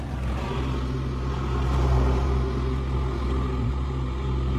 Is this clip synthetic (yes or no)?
no